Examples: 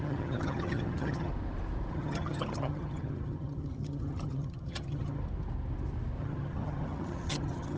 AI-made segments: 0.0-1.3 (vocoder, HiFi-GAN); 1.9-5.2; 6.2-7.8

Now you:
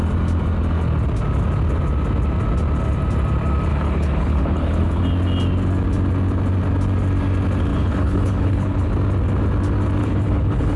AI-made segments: 3.7-5.0 (codec, HILCodec); 7.7-8.9; 10.0-10.8

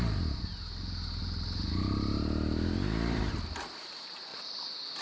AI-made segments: 1.2-3.8 (vocoder, BigVGAN v2)